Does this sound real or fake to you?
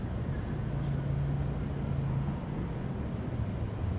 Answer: real